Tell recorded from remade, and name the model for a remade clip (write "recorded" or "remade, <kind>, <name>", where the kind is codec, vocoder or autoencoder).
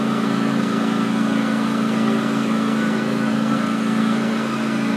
remade, codec, SNAC